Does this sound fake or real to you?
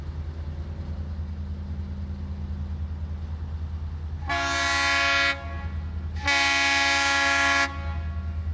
real